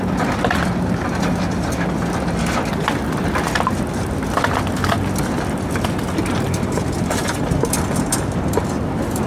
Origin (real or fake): fake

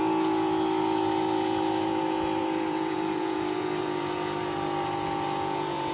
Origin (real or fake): fake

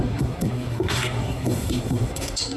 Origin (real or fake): fake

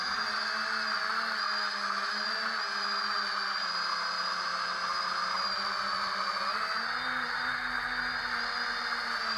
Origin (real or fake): real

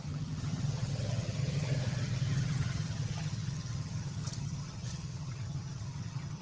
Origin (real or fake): fake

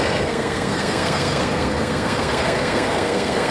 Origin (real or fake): fake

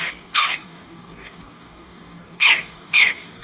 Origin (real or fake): fake